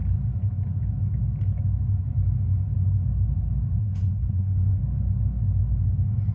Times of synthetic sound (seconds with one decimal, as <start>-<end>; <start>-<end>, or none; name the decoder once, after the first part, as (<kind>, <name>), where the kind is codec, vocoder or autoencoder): 3.8-4.8 (codec, SNAC)